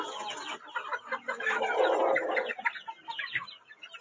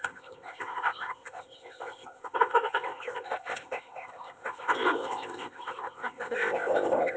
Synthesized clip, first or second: second